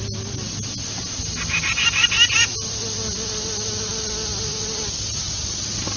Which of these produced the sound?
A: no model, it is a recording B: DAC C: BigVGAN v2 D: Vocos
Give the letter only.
A